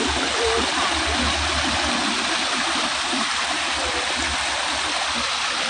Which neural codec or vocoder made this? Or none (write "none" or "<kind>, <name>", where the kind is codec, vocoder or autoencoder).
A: none